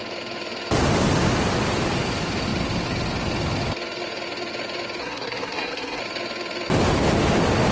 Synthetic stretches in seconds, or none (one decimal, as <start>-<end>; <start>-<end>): 5.0-6.0